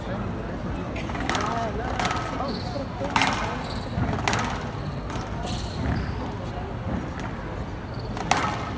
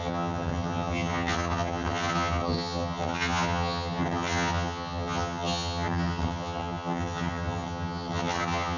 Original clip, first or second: first